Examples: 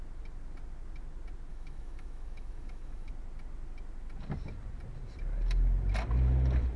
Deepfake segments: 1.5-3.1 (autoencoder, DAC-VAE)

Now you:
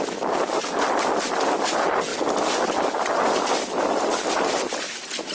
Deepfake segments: none

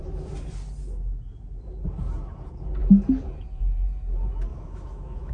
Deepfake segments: 4.5-5.3 (autoencoder, DAC-VAE)

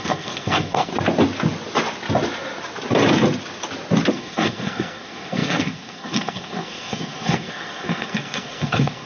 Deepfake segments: 0.0-0.9 (codec, SNAC); 4.1-9.1

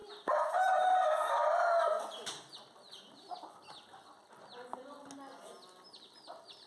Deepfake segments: none

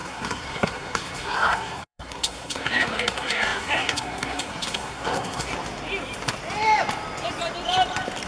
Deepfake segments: 0.0-5.5 (codec, SNAC)

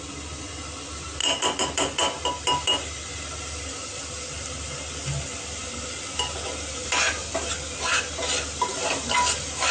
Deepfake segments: 1.2-5.7 (vocoder, BigVGAN v2); 7.2-7.8; 8.7-9.7